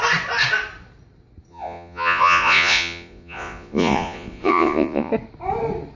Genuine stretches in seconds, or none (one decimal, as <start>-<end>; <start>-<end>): 0.0-1.5; 5.1-6.0